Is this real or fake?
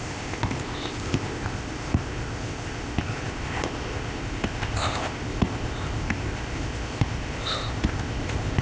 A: fake